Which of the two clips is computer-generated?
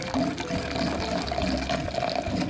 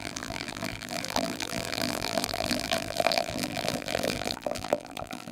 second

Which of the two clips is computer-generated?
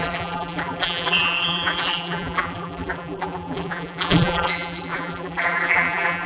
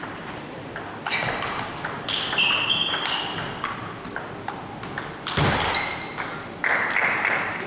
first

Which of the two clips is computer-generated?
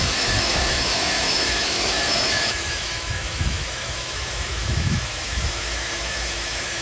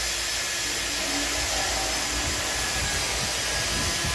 first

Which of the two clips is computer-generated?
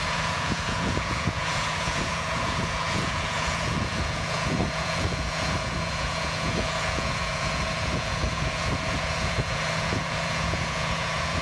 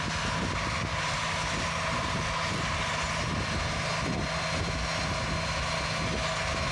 first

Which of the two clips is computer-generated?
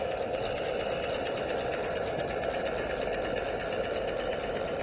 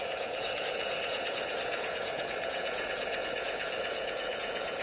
second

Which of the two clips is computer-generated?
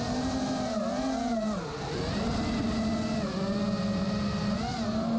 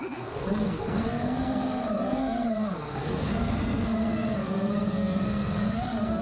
second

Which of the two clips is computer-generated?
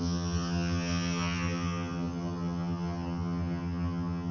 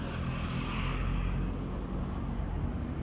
first